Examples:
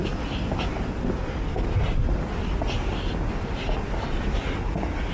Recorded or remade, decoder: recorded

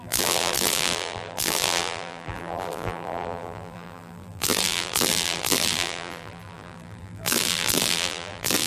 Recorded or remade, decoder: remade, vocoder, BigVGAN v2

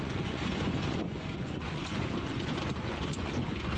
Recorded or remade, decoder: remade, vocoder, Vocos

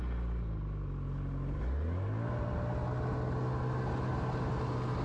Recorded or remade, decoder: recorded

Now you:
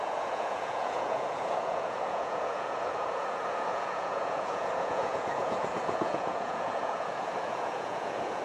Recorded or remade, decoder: remade, vocoder, Vocos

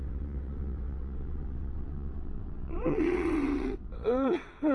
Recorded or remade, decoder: remade, vocoder, WaveNeXt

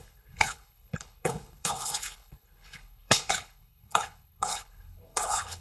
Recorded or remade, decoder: remade, codec, HILCodec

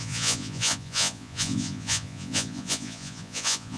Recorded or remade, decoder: remade, vocoder, Vocos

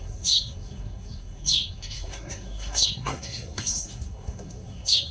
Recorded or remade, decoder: remade, codec, SNAC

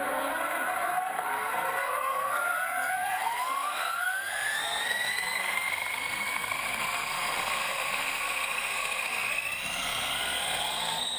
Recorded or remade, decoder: remade, codec, SNAC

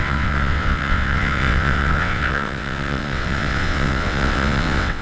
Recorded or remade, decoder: remade, vocoder, WaveNeXt